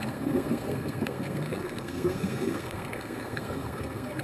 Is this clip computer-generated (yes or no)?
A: yes